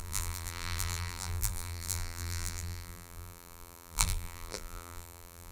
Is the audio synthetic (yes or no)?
yes